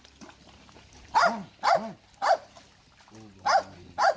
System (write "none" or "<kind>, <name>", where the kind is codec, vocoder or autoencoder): none